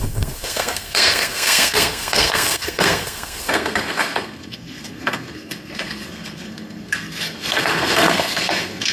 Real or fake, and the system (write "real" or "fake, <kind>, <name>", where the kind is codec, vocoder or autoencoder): fake, codec, SNAC